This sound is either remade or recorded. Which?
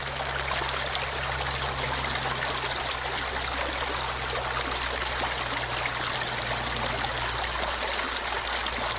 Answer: recorded